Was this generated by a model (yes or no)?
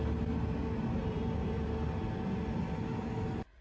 no